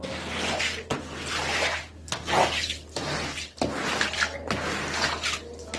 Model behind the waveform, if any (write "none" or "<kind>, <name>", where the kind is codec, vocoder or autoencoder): none